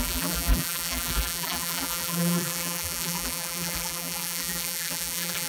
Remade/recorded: remade